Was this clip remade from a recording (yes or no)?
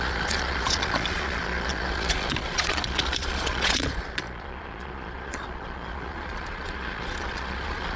yes